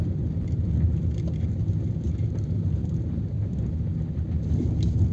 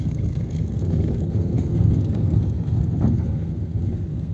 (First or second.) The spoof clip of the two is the second